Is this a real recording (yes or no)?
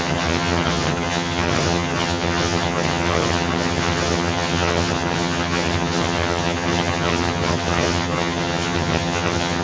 no